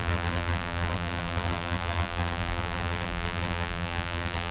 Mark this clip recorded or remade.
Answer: remade